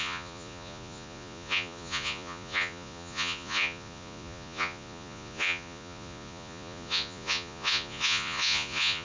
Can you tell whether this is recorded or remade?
remade